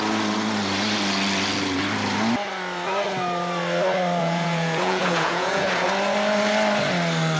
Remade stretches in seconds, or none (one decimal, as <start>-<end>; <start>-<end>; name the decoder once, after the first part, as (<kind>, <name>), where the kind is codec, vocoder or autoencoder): 4.2-5.9 (vocoder, Vocos)